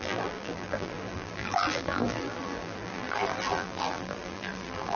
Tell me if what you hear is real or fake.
fake